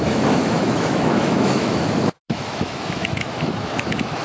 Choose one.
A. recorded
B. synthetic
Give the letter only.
B